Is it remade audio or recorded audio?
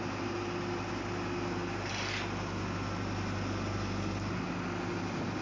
recorded